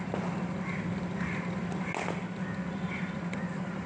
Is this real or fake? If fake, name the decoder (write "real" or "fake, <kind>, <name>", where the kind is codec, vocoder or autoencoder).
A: real